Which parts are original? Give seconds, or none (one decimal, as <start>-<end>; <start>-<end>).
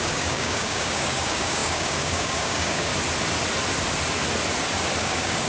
2.9-5.0